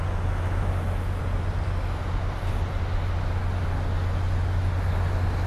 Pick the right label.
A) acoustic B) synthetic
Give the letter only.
A